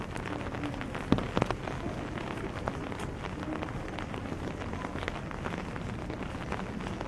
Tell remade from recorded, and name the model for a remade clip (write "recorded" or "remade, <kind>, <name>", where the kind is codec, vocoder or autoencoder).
recorded